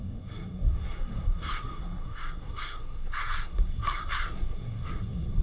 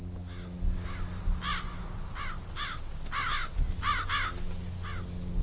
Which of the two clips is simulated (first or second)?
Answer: first